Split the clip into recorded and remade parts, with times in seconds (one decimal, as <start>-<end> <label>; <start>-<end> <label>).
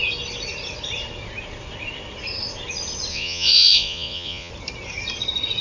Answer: 0.0-3.1 recorded; 3.1-4.5 remade; 4.5-5.6 recorded